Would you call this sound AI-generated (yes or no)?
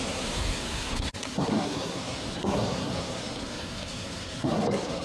yes